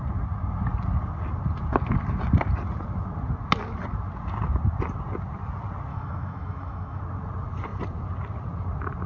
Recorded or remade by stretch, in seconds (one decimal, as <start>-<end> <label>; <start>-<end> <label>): 0.0-5.9 recorded; 5.9-7.0 remade; 7.0-9.1 recorded